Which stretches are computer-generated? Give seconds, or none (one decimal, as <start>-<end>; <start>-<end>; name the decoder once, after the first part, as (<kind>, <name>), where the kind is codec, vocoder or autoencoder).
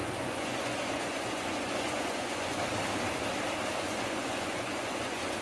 0.0-2.7 (vocoder, Vocos); 3.7-5.4